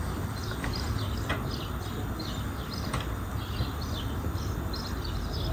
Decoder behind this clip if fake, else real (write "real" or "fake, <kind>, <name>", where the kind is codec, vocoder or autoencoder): real